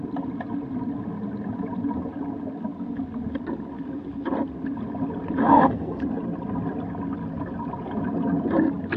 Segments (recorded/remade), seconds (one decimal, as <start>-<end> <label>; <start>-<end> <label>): 0.0-5.4 recorded; 5.4-6.0 remade; 6.0-9.0 recorded